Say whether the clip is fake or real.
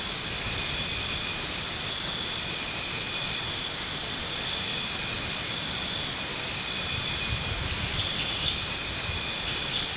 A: real